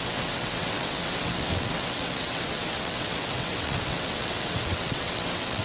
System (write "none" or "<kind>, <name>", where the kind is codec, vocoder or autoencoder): vocoder, WaveNeXt